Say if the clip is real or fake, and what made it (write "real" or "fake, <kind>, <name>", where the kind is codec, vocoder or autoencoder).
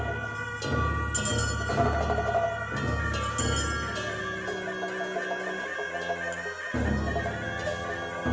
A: real